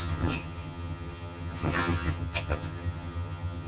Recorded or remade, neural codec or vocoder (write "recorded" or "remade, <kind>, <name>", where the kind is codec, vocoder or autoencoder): remade, vocoder, HiFi-GAN